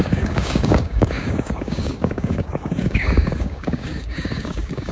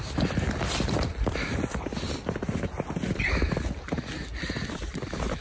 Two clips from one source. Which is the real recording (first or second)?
second